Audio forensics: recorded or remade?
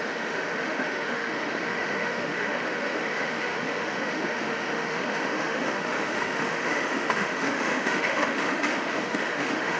remade